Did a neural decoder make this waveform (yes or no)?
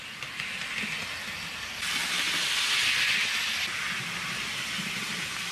no